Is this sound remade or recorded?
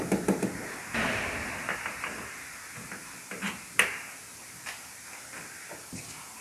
recorded